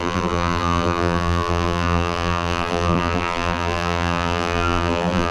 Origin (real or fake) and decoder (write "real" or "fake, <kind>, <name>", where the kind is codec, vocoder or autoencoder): fake, vocoder, BigVGAN v2